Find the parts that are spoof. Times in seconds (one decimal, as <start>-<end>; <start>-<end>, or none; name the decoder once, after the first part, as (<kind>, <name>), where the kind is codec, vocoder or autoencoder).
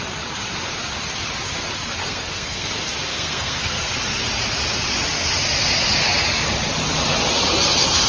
2.0-2.7 (codec, SNAC); 3.1-3.9